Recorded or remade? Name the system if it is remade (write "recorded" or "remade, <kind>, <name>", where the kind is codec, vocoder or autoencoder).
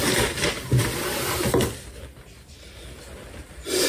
remade, vocoder, BigVGAN v2